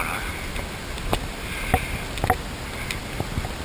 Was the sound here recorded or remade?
recorded